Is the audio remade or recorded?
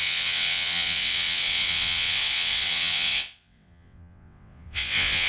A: remade